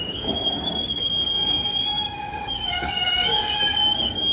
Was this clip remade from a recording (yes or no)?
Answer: yes